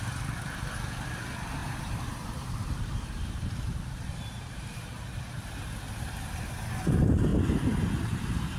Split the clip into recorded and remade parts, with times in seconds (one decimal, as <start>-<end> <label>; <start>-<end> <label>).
0.0-1.6 recorded; 1.6-5.7 remade; 5.7-8.6 recorded